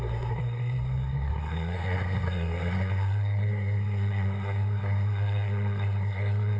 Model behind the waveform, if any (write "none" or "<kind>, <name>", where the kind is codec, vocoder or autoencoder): codec, SNAC